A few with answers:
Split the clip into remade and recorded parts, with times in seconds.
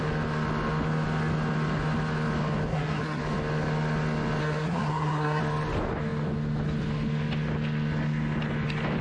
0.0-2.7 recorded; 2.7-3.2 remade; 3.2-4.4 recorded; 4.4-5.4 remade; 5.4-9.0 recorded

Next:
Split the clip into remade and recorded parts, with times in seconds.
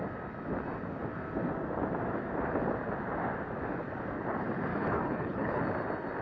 0.0-4.7 recorded; 4.7-5.6 remade; 5.6-6.2 recorded